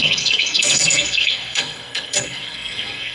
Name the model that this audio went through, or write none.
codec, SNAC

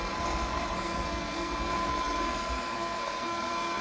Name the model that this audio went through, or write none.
codec, SNAC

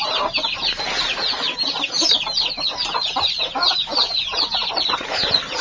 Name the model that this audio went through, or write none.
none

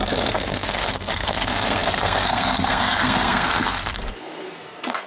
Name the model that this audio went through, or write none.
codec, SNAC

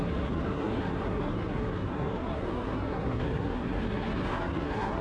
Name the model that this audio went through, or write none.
codec, SNAC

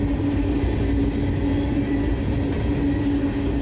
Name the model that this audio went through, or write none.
none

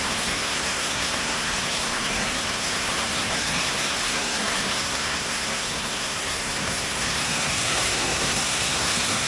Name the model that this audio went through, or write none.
codec, SNAC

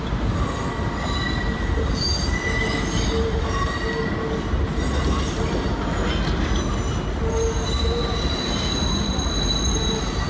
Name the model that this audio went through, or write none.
none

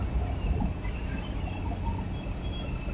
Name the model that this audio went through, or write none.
none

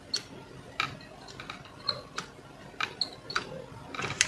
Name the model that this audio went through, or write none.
none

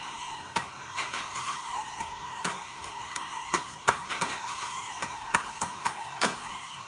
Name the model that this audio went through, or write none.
codec, SNAC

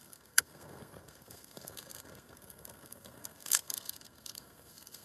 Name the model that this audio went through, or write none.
codec, SNAC